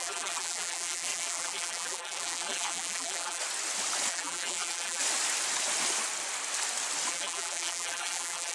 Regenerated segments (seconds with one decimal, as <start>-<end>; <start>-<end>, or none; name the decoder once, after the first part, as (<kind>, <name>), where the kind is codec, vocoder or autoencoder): 0.0-3.4 (vocoder, BigVGAN v2); 4.1-5.0; 7.1-8.5